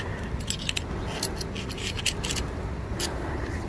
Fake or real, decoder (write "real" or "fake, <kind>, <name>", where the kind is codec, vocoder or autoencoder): real